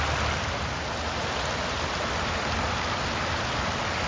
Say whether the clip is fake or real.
real